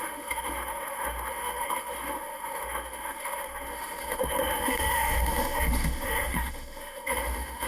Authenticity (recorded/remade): remade